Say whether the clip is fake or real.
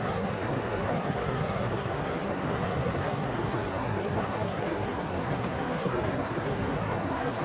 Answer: fake